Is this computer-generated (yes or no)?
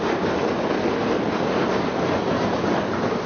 yes